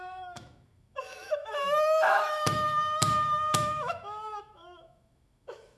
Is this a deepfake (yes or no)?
yes